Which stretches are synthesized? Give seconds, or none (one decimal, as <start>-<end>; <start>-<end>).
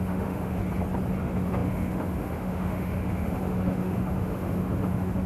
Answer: 0.0-0.6; 1.2-5.3